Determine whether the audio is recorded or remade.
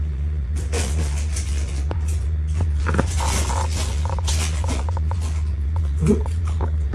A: remade